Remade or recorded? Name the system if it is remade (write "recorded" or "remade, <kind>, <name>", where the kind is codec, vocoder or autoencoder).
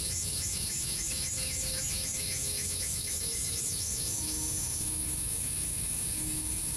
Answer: remade, autoencoder, DAC-VAE